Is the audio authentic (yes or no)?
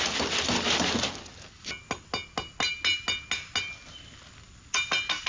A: yes